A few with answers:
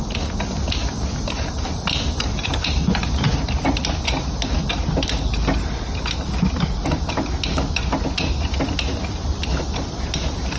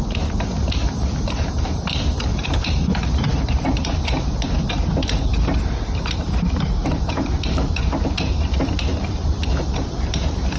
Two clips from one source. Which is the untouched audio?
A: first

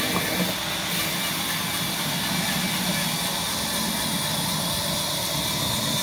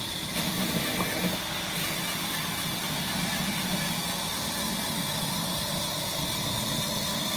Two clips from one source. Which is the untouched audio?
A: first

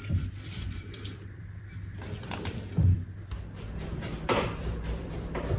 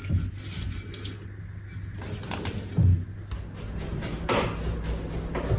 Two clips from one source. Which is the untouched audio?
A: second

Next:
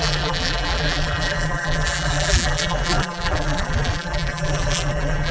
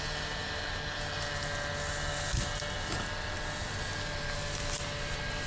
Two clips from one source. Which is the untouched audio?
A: second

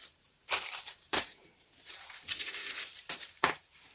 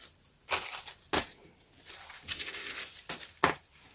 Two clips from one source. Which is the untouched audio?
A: second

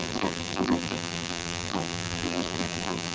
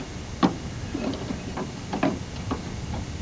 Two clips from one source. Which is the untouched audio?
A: second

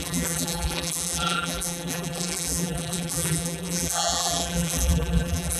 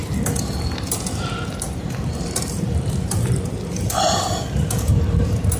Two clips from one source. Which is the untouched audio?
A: second